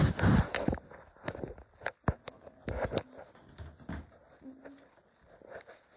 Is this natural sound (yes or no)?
yes